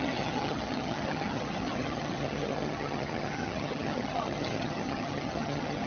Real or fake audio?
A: fake